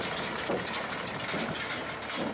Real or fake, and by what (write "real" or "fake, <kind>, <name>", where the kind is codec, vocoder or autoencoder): real